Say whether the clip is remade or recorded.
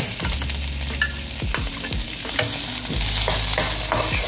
recorded